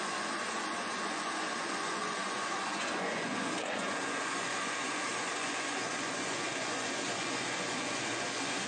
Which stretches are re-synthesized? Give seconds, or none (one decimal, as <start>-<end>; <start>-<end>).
0.0-8.7